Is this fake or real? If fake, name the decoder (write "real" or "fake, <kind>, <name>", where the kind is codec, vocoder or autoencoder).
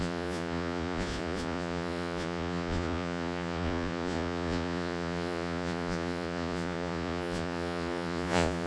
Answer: fake, vocoder, Vocos